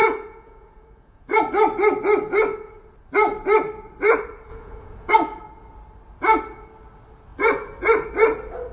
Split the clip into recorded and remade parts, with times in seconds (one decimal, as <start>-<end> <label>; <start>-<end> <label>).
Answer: 0.0-1.4 remade; 1.4-4.5 recorded; 4.5-5.1 remade; 5.1-8.7 recorded